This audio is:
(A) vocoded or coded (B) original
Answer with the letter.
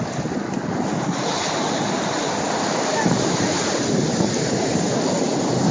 B